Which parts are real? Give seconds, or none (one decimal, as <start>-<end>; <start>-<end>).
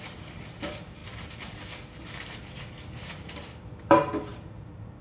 1.0-2.0